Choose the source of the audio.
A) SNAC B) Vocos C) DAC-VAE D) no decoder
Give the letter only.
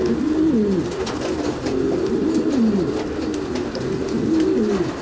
D